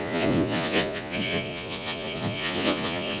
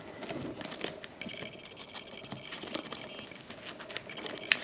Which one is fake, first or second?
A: first